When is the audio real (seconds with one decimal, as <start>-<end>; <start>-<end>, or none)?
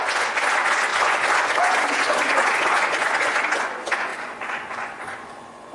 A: none